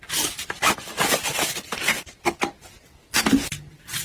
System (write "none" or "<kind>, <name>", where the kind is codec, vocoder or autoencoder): none